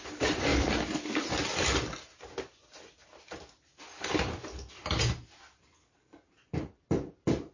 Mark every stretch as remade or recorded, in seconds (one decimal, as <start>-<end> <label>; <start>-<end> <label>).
0.0-0.5 remade; 0.5-5.0 recorded; 5.0-7.5 remade